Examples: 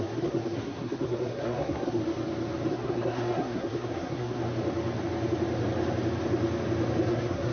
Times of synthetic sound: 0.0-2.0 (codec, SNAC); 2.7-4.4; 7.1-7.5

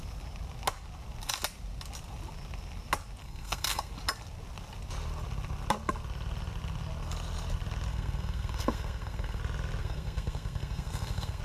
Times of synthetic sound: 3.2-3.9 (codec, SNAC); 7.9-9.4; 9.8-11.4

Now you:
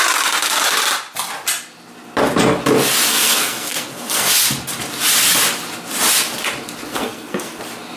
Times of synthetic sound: 3.1-4.3 (codec, SNAC); 6.9-7.6